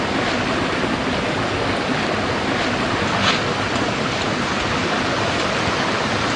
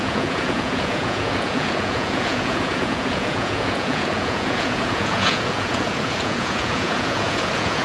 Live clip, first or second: first